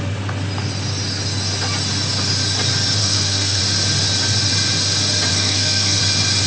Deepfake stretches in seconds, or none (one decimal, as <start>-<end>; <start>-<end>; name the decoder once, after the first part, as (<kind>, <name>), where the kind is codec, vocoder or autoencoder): 3.0-3.6 (codec, SNAC); 5.3-6.0